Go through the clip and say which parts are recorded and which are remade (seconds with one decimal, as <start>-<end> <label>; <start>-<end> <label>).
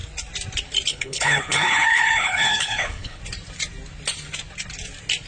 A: 0.0-0.9 recorded; 0.9-3.2 remade; 3.2-5.3 recorded